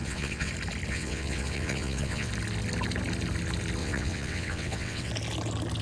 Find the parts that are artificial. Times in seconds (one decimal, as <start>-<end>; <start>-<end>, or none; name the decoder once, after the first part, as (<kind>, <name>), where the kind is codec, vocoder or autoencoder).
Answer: 0.0-0.5 (vocoder, WaveNeXt); 0.9-2.3; 3.8-5.1